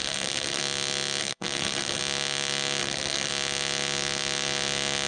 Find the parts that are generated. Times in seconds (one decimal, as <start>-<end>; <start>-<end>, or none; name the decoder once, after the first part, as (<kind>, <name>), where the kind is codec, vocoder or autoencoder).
0.0-0.6 (codec, SNAC); 1.2-2.0; 2.8-3.3